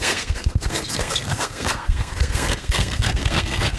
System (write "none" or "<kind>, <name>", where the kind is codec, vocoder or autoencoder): codec, SNAC